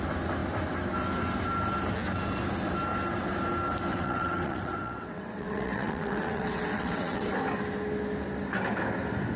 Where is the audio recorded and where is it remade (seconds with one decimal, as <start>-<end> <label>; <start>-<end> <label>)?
0.0-3.9 recorded; 3.9-7.3 remade; 7.3-9.4 recorded